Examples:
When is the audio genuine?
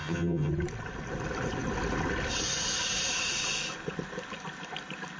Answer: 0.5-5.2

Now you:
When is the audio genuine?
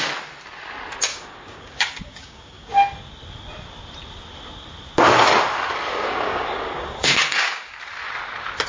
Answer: 0.0-1.1; 2.7-5.9; 7.7-8.7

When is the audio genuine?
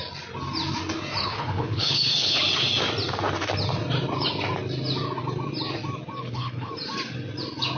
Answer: 0.0-1.2; 2.4-6.2; 6.7-7.8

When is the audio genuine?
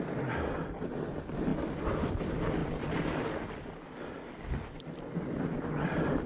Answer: 0.0-6.3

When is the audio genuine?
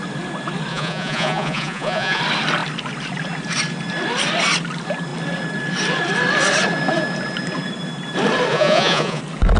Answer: 0.0-0.7; 2.2-8.5; 9.2-9.6